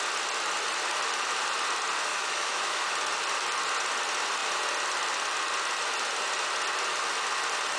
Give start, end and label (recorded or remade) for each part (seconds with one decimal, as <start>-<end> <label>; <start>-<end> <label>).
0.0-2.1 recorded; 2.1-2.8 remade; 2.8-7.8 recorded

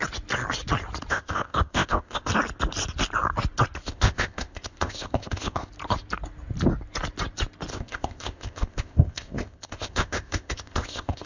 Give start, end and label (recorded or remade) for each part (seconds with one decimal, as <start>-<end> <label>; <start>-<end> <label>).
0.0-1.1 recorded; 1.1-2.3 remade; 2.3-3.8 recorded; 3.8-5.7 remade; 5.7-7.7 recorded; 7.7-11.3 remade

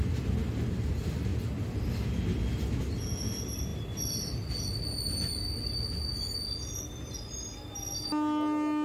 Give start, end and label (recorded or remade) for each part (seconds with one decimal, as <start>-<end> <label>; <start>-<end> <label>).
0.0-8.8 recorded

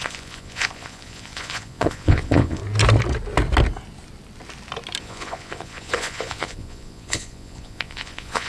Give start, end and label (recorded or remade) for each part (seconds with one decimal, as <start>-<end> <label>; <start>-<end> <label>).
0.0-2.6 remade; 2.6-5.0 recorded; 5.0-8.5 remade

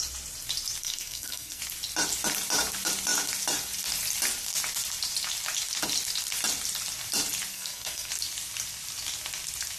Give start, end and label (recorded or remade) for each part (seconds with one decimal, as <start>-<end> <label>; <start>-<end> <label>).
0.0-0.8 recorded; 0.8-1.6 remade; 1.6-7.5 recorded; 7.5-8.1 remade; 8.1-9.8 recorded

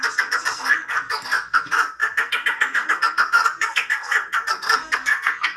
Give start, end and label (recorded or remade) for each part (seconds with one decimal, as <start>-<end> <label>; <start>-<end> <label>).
0.0-5.6 remade

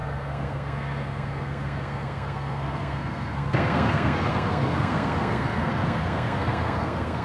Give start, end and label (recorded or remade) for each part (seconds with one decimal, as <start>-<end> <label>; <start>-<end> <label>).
0.0-7.2 remade